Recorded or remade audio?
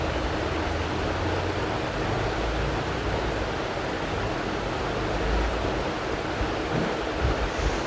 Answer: recorded